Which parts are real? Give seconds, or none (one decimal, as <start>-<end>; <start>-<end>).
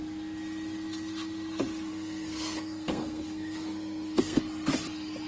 0.0-1.9; 4.4-5.3